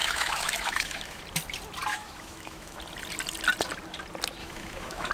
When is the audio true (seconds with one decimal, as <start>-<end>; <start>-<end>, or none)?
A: 1.2-1.9; 2.8-4.4